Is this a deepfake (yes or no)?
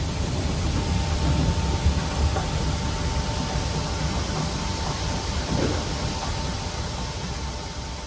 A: no